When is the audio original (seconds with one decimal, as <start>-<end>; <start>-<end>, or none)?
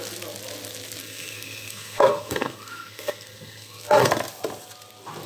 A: 0.0-1.0; 4.1-5.3